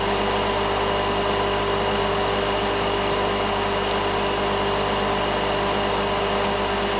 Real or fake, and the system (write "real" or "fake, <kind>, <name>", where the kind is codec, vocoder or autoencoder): real